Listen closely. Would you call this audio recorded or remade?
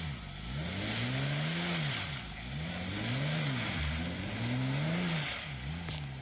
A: recorded